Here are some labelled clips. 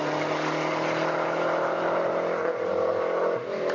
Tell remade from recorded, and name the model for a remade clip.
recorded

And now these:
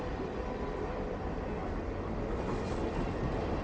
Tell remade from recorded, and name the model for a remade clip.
recorded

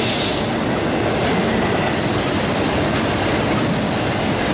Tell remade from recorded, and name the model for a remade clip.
recorded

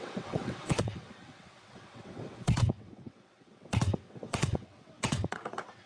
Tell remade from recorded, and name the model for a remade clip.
remade, vocoder, WaveNeXt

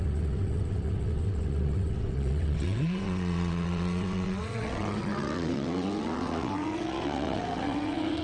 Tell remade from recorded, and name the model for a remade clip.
remade, vocoder, WaveNeXt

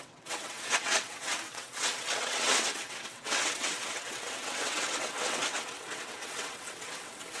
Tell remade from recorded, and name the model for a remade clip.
remade, vocoder, WaveNeXt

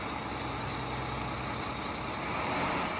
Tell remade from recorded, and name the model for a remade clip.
recorded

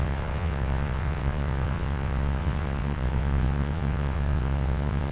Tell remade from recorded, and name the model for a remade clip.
remade, vocoder, WaveNeXt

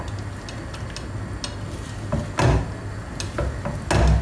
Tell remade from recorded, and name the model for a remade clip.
recorded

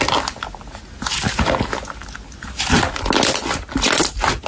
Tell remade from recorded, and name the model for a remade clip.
recorded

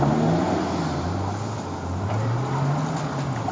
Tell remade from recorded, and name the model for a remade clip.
recorded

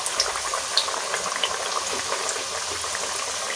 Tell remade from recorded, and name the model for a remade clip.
recorded